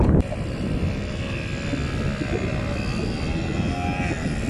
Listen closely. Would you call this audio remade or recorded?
recorded